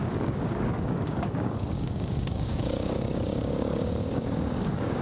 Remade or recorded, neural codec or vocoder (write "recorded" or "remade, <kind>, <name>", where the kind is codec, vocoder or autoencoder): remade, codec, DAC